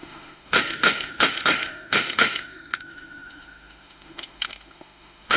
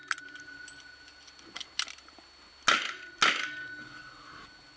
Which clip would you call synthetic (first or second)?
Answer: first